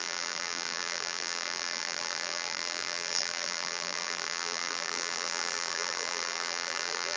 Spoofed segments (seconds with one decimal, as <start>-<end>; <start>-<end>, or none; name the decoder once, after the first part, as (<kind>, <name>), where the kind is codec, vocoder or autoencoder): 0.0-7.2 (vocoder, BigVGAN v2)